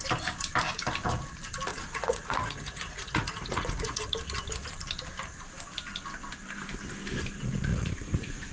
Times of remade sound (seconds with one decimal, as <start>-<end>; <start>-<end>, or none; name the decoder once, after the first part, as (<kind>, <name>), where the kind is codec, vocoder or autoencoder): 1.7-4.0 (vocoder, Vocos); 7.7-8.5